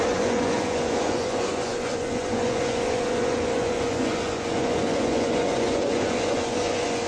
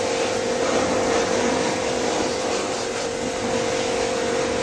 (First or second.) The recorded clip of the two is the second